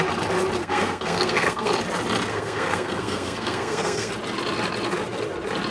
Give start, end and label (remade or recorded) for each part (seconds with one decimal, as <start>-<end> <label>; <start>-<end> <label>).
0.0-0.6 recorded; 0.6-1.7 remade; 1.7-2.3 recorded; 2.3-4.1 remade; 4.1-5.7 recorded